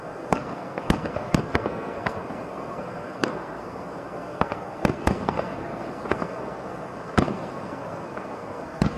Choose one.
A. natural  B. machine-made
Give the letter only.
B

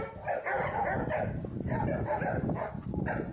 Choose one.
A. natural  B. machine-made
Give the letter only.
A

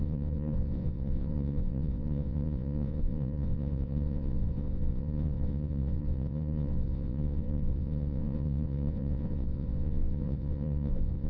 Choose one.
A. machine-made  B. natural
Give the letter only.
A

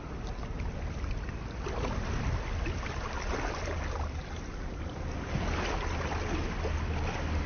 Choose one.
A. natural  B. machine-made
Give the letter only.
A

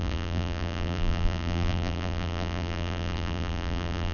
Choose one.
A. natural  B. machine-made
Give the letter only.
B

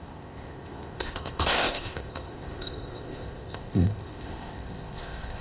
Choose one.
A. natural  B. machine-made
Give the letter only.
B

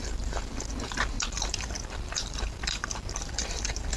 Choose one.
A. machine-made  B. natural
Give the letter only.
A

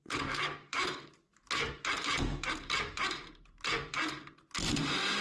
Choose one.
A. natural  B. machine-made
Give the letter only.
B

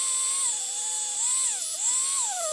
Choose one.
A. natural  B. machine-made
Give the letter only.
A